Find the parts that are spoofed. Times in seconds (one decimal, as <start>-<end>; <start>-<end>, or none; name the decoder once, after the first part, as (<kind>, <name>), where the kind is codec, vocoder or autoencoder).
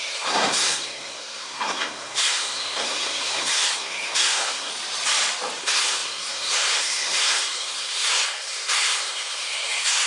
0.0-4.7 (codec, SNAC); 5.6-10.1